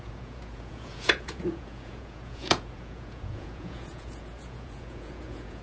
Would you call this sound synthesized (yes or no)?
yes